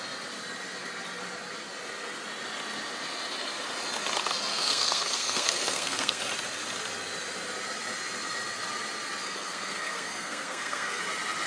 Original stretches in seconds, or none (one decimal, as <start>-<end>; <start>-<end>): 0.0-4.5; 6.2-9.2; 11.0-11.5